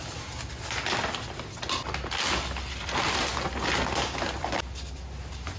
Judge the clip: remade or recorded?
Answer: recorded